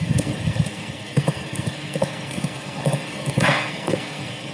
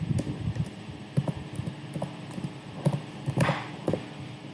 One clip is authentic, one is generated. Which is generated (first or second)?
first